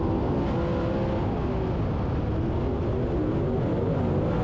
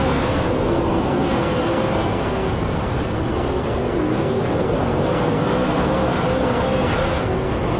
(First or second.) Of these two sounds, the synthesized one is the second